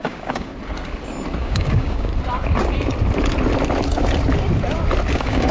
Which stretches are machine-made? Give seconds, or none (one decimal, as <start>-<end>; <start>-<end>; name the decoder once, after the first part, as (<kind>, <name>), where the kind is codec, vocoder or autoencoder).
0.0-0.5 (codec, DAC); 1.4-2.1; 5.1-5.5